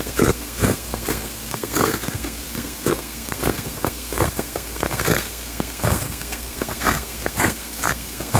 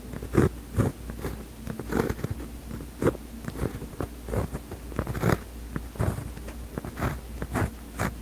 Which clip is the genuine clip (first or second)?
second